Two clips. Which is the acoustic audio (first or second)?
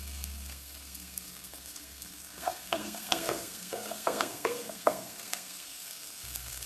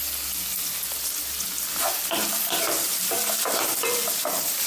second